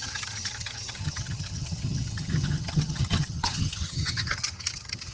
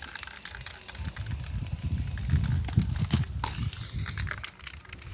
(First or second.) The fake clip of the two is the first